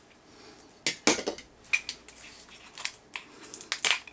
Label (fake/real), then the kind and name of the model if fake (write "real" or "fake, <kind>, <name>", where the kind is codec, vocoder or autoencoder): real